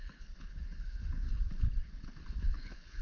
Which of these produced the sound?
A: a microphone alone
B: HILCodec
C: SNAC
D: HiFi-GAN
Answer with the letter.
B